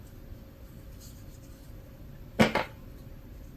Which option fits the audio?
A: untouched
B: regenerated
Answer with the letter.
A